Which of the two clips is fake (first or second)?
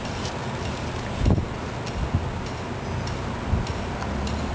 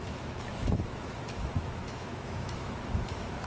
second